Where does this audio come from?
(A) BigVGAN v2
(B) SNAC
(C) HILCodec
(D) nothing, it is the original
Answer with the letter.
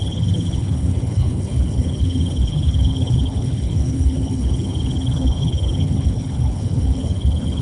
C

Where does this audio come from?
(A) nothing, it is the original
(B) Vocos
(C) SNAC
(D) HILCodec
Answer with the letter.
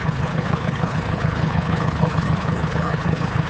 D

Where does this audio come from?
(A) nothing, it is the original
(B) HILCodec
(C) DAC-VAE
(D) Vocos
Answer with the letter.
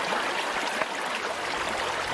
A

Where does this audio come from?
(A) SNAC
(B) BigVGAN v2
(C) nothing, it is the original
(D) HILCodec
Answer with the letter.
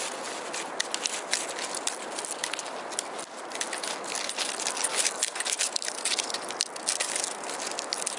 C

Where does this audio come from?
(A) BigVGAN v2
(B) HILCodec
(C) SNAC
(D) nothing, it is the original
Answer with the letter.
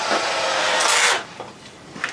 D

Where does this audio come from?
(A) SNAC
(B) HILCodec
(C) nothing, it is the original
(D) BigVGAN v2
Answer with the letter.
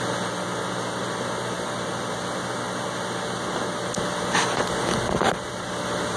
C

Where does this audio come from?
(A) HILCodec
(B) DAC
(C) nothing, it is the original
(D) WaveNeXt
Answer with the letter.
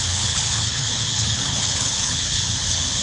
A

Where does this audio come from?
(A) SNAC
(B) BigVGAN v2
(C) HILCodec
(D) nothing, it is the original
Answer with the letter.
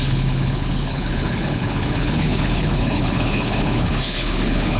C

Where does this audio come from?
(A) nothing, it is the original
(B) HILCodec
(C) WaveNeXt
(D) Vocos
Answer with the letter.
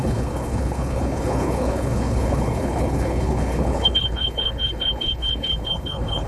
B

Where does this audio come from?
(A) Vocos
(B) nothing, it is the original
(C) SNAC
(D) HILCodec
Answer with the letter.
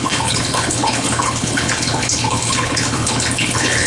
D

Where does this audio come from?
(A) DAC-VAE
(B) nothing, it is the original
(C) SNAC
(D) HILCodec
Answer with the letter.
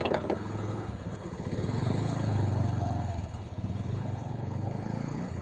D